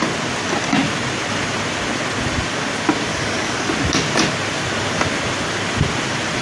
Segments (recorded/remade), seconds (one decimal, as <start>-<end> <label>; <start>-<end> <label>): 0.0-3.1 recorded; 3.1-3.7 remade; 3.7-6.4 recorded